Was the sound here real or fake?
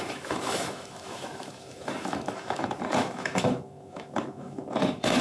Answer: fake